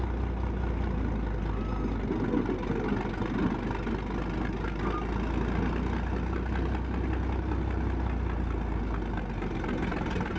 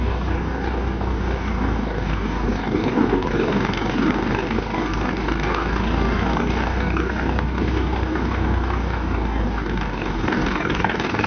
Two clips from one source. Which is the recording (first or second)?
first